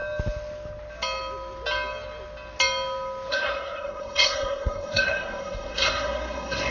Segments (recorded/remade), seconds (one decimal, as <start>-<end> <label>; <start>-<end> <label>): 0.0-3.3 recorded; 3.3-6.7 remade